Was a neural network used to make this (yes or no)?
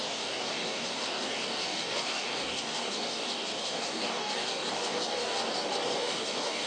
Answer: yes